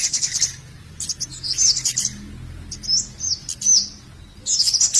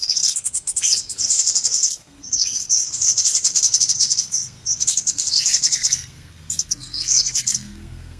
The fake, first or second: second